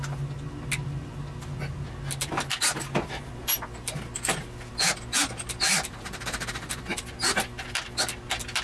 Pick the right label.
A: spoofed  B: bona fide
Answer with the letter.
B